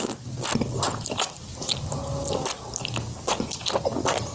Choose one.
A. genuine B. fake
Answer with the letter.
A